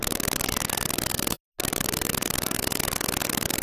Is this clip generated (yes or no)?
no